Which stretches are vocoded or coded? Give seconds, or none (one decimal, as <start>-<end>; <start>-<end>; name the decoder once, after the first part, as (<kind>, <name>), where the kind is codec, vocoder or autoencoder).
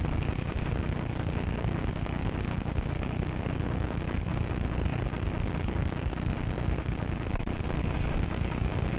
0.0-9.0 (codec, DAC)